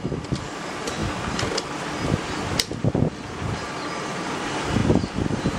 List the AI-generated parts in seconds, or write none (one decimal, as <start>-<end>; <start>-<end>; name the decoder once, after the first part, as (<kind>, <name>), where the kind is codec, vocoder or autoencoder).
none